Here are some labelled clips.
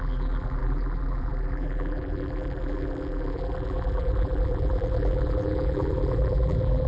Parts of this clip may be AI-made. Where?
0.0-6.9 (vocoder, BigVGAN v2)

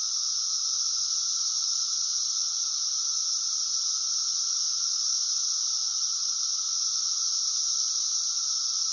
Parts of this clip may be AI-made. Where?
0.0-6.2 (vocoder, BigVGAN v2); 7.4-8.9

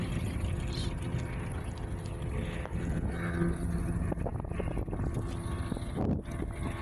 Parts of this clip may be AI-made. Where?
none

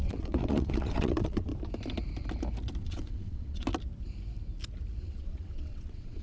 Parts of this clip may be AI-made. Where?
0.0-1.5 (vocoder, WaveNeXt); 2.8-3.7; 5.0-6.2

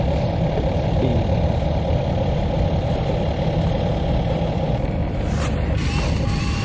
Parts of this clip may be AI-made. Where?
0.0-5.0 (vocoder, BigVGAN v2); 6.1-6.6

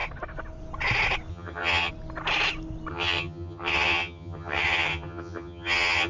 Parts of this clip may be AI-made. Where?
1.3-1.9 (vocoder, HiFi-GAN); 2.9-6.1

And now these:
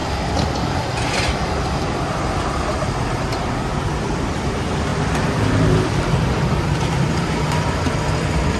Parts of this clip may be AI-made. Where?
0.0-3.5 (vocoder, BigVGAN v2); 4.9-7.9

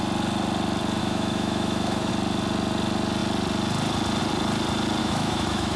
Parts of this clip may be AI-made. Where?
1.0-2.1 (autoencoder, DAC-VAE); 5.0-5.8